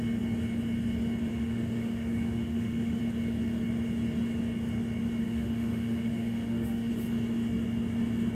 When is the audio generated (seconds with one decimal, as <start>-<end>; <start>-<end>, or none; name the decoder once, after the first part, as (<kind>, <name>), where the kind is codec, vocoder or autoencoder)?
1.3-3.0 (autoencoder, DAC-VAE); 5.2-6.9